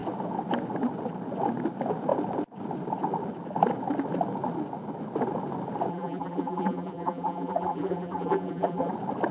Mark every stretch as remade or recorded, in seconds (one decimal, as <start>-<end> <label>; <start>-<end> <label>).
0.0-5.9 recorded; 5.9-8.9 remade; 8.9-9.3 recorded